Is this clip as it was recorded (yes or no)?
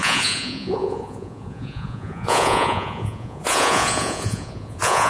no